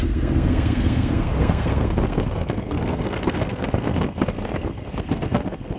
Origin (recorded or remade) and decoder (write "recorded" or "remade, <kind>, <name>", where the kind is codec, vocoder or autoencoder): remade, codec, SNAC